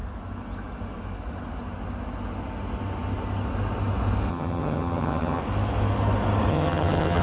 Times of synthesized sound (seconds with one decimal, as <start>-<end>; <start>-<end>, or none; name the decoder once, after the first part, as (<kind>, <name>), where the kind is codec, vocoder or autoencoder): 4.3-5.4 (vocoder, HiFi-GAN); 6.5-7.2